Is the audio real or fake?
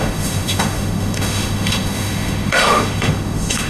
fake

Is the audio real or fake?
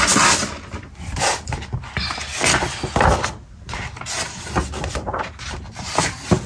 real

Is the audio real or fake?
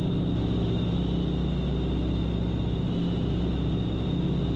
real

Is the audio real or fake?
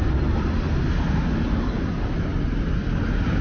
real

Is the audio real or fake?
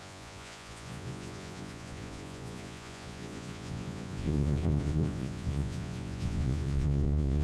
fake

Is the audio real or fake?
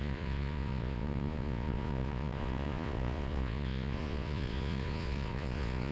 fake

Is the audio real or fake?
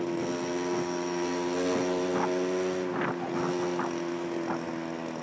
real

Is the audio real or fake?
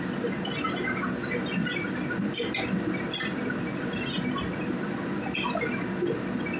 real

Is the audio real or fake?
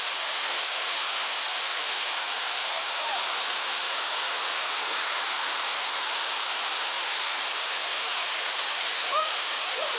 fake